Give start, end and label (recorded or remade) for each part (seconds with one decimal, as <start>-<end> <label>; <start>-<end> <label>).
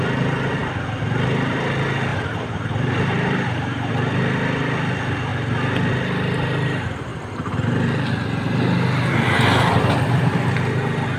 0.0-2.1 recorded; 2.1-3.9 remade; 3.9-11.2 recorded